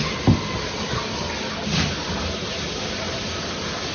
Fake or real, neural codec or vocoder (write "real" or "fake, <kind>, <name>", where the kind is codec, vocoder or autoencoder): real